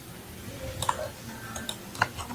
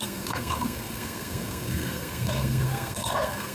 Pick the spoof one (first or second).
second